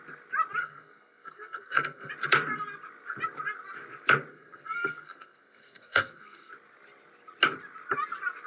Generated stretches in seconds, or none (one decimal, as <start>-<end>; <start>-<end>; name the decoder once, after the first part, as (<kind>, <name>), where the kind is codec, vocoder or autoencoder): 0.6-2.1 (codec, SNAC); 4.3-6.5